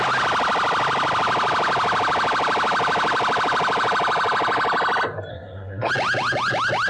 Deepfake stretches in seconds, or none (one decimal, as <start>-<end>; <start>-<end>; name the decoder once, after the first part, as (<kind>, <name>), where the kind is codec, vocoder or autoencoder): 5.3-5.9 (codec, SNAC)